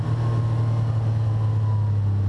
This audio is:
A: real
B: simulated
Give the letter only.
A